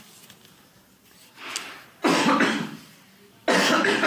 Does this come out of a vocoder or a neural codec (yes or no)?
no